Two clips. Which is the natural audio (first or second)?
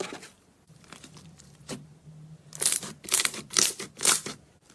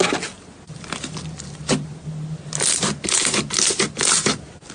second